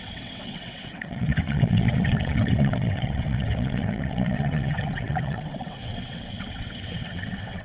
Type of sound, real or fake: fake